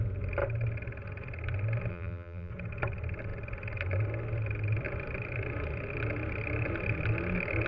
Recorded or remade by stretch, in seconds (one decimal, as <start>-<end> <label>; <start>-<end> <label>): 0.0-1.9 recorded; 1.9-2.5 remade; 2.5-7.7 recorded